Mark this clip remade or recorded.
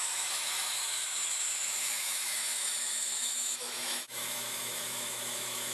remade